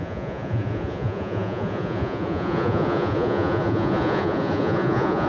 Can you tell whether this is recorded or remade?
remade